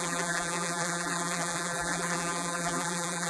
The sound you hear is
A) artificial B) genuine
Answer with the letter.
A